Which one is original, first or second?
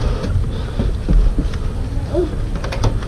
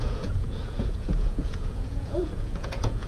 first